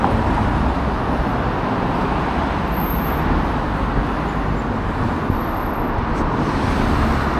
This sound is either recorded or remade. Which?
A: recorded